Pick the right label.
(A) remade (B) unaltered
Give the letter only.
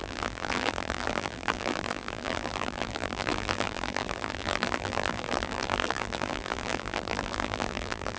A